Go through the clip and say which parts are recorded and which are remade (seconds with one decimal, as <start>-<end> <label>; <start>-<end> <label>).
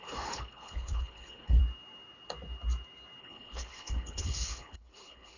0.0-1.6 remade; 1.6-3.2 recorded; 3.2-5.4 remade